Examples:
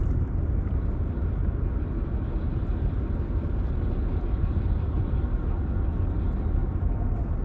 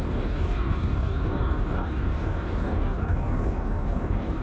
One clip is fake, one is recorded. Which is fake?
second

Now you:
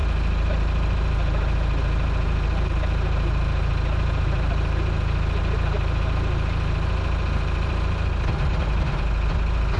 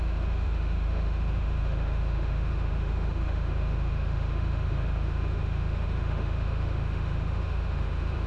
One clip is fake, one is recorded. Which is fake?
second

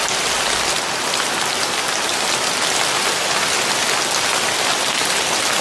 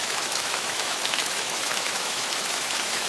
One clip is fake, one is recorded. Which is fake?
second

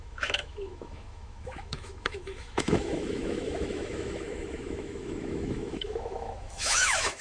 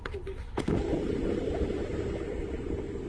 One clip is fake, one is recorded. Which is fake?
first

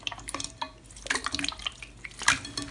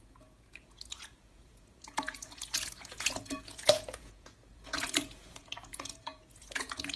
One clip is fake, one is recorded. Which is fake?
second